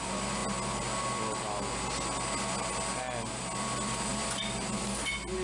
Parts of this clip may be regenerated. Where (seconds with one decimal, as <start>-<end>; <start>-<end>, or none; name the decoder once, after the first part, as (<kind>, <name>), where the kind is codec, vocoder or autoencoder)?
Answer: 4.1-4.7 (vocoder, BigVGAN v2)

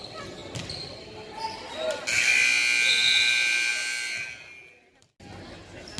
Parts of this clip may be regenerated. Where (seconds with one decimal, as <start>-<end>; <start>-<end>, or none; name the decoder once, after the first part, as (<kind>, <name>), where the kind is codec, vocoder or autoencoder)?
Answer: none

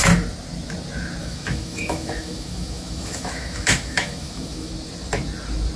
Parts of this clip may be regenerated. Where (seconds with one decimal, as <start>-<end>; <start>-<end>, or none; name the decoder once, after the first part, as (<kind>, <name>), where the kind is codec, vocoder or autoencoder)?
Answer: 1.2-4.7 (autoencoder, DAC-VAE)

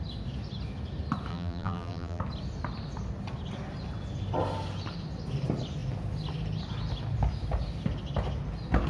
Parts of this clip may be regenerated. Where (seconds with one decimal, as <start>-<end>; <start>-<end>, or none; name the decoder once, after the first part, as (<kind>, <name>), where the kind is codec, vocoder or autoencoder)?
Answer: 1.3-2.2 (vocoder, BigVGAN v2)

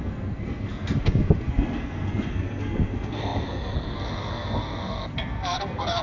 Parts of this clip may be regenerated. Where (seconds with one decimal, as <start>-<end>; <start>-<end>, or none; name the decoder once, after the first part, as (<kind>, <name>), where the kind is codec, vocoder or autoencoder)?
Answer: 0.0-6.0 (codec, SNAC)

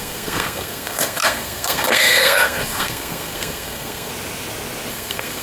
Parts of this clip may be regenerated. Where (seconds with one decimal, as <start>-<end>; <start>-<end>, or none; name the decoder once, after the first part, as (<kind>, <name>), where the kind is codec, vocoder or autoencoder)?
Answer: 0.0-4.1 (codec, SNAC); 4.9-5.4